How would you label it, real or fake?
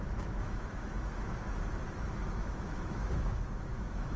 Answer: fake